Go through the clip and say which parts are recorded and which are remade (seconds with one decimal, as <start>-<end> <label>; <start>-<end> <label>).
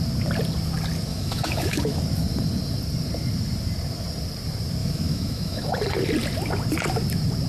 0.0-1.1 recorded; 1.1-2.0 remade; 2.0-4.8 recorded; 4.8-5.6 remade; 5.6-7.5 recorded